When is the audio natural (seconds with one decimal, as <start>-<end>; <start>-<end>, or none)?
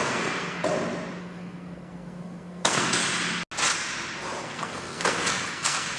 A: 0.6-1.2; 3.0-4.4